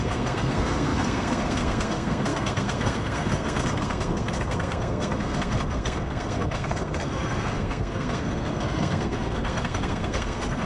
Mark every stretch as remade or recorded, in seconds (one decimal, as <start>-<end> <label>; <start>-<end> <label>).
0.0-10.7 remade